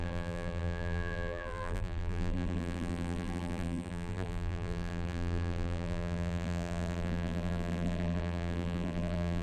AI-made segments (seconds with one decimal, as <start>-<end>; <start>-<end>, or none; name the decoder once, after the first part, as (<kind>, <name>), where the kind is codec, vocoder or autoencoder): 0.0-9.4 (vocoder, BigVGAN v2)